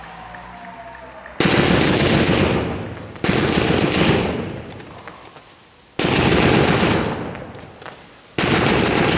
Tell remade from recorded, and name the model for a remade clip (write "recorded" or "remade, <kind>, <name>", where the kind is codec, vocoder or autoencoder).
recorded